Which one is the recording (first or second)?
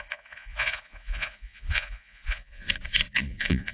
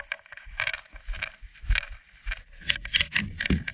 second